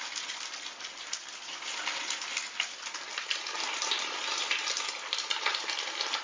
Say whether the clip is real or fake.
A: real